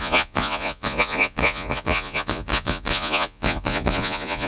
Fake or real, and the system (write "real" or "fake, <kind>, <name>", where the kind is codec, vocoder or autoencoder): fake, vocoder, Vocos